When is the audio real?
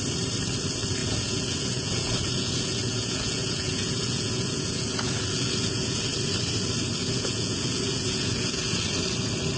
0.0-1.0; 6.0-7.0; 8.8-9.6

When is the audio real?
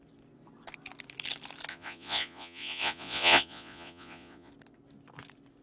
0.0-1.7; 4.5-5.6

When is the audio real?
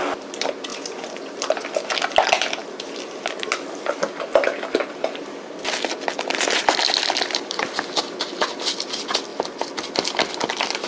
0.0-0.7; 1.3-10.9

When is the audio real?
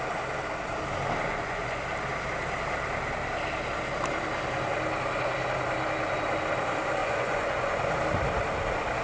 0.0-1.2; 1.8-7.0; 7.9-9.0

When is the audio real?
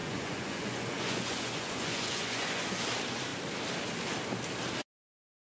2.6-5.5